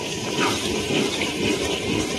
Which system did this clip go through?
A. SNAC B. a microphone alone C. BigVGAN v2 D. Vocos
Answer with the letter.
C